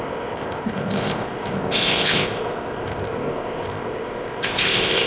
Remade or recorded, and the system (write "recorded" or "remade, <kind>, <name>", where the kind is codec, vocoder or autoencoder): remade, codec, ZipCodec